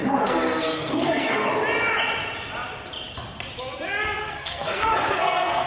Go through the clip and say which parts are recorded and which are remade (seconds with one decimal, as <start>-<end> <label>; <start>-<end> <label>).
0.0-1.5 remade; 1.5-4.2 recorded; 4.2-5.7 remade